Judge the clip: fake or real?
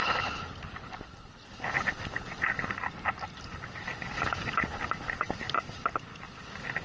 real